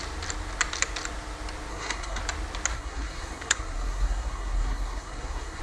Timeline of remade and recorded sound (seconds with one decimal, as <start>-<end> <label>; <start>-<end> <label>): 0.0-1.7 recorded; 1.7-2.2 remade; 2.2-2.7 recorded; 2.7-5.6 remade